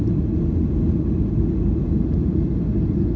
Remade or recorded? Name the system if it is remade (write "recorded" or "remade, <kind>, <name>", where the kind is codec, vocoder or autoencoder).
recorded